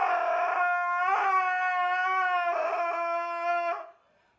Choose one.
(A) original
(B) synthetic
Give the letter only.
A